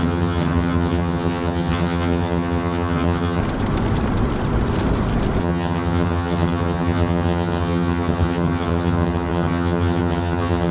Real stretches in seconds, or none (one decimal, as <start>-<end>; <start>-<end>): 3.4-5.4